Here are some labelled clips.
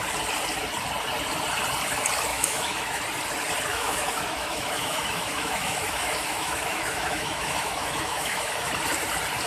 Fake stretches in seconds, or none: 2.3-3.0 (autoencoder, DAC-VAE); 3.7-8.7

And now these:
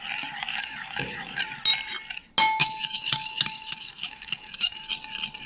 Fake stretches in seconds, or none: 0.5-1.4 (autoencoder, DAC-VAE); 2.4-4.9

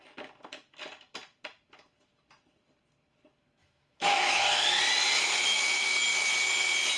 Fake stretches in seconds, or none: 3.6-4.8 (autoencoder, DAC-VAE); 5.5-6.3

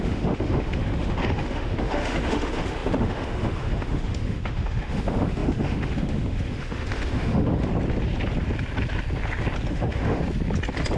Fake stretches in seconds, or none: 0.0-7.7 (autoencoder, DAC-VAE); 9.7-10.2

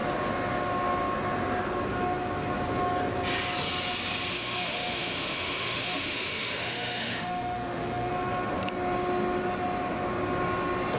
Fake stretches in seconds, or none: 4.3-8.1 (autoencoder, DAC-VAE)

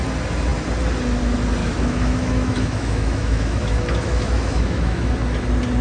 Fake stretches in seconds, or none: 1.6-5.1 (autoencoder, DAC-VAE)

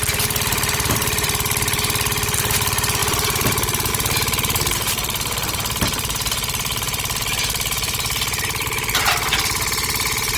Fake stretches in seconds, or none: none

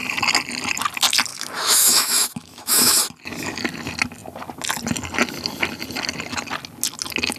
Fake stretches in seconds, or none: 1.3-3.0 (autoencoder, DAC-VAE)